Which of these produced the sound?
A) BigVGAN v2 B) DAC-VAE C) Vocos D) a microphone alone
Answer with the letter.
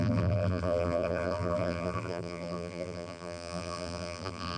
A